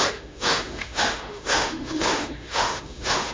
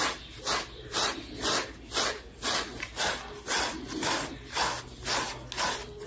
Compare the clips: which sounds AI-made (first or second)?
first